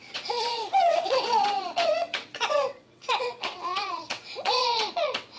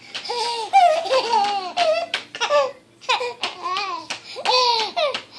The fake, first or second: first